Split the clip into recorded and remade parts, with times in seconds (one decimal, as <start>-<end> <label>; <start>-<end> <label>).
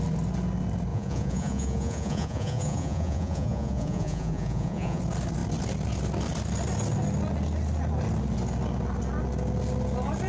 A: 0.0-0.9 recorded; 0.9-5.0 remade; 5.0-10.3 recorded